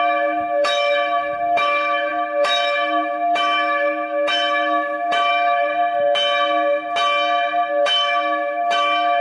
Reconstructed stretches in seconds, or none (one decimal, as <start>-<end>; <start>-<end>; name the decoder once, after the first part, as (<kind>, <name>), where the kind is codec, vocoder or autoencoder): 0.0-5.7 (autoencoder, DAC-VAE); 7.7-9.2